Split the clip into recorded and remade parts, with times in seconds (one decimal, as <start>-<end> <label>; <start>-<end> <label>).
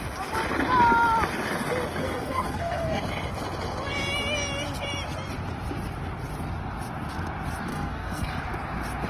0.0-2.0 recorded; 2.0-3.0 remade; 3.0-7.7 recorded; 7.7-8.3 remade; 8.3-9.1 recorded